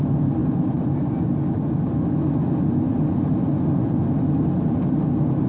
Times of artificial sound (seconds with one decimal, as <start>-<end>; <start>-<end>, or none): none